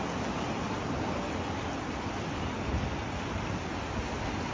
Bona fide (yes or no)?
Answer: yes